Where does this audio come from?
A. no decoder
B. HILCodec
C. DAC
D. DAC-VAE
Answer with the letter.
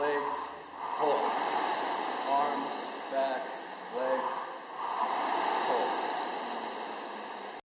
A